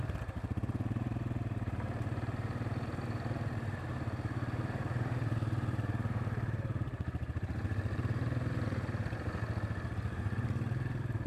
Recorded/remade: remade